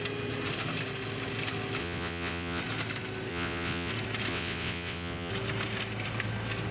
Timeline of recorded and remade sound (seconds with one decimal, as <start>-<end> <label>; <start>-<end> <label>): 0.0-1.8 recorded; 1.8-2.6 remade; 2.6-3.3 recorded; 3.3-3.9 remade; 3.9-4.3 recorded; 4.3-5.3 remade; 5.3-6.7 recorded